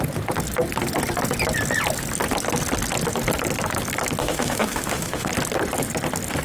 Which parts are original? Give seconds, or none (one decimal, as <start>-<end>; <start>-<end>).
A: 0.0-4.2; 5.3-6.4